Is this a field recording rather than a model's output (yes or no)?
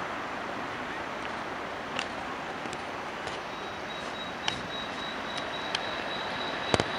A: yes